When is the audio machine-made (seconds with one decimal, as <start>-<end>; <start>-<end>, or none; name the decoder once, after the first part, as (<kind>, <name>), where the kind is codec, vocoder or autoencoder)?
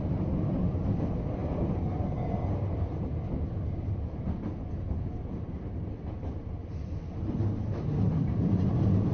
none